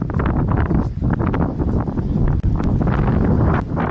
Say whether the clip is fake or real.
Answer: real